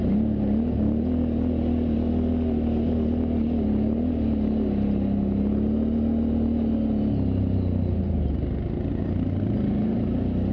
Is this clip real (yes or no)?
yes